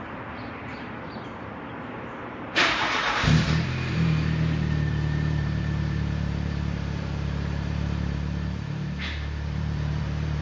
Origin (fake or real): fake